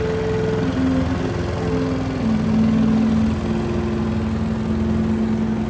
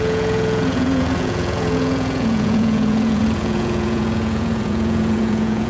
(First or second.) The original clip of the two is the first